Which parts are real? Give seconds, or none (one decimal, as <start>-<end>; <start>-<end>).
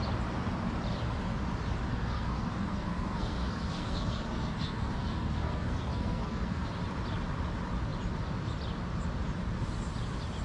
0.0-1.9; 6.7-10.4